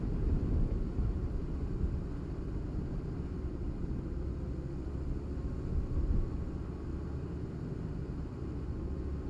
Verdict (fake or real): real